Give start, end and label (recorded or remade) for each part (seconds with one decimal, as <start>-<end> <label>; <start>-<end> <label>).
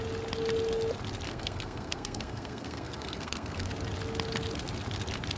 0.0-1.3 recorded; 1.3-3.7 remade; 3.7-5.4 recorded